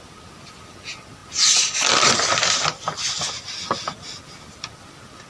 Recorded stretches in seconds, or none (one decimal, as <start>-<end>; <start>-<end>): 0.0-5.3